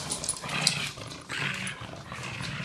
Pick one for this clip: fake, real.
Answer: real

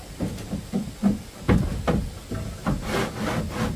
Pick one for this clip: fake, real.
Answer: real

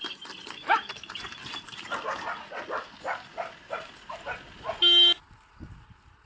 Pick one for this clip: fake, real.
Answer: real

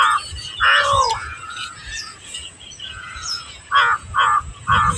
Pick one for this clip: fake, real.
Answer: fake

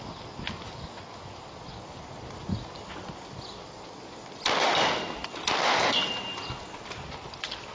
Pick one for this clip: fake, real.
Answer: real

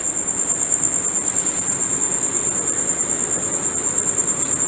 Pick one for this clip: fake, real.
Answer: real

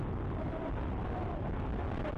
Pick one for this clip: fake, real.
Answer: real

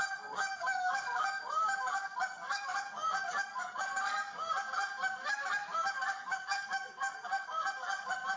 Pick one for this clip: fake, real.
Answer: fake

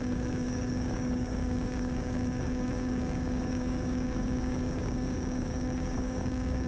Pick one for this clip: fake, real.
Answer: fake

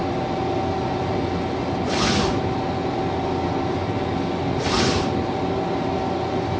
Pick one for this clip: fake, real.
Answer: real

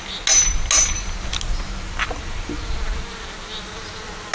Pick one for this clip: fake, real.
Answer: real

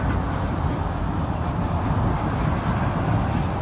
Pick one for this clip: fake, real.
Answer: real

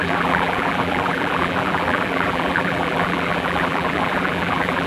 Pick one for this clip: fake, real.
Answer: fake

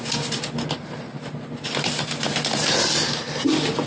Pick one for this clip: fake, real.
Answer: real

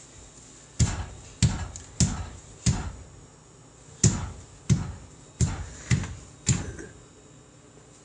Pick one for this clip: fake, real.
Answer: real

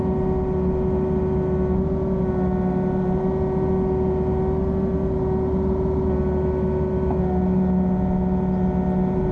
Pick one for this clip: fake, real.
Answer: real